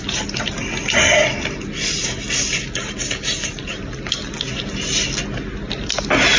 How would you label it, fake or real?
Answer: real